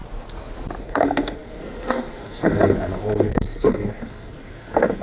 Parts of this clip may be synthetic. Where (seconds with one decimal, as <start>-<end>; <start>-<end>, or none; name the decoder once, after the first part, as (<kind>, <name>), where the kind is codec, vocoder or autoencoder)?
0.8-5.0 (codec, SNAC)